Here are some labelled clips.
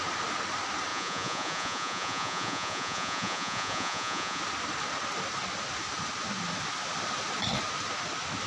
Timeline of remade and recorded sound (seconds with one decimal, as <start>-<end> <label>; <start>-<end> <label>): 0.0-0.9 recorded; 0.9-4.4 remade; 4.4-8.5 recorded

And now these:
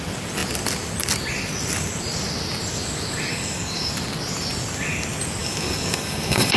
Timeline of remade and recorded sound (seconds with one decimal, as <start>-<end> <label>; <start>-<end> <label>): 0.0-3.3 recorded; 3.3-3.9 remade; 3.9-5.4 recorded; 5.4-6.6 remade

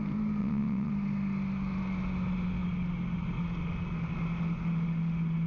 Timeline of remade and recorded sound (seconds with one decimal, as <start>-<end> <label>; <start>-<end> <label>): 0.0-0.4 recorded; 0.4-0.9 remade; 0.9-5.5 recorded

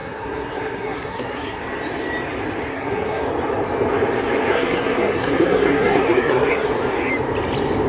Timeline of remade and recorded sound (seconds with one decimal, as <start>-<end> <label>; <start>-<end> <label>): 0.0-1.6 remade; 1.6-2.7 recorded; 2.7-3.3 remade; 3.3-4.5 recorded; 4.5-6.7 remade; 6.7-7.9 recorded